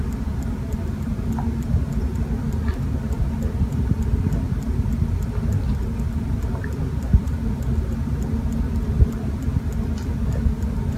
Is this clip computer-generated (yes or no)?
no